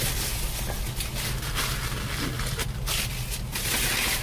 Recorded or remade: recorded